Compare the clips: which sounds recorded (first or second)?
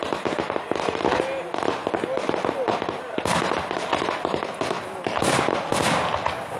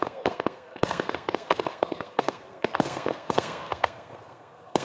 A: first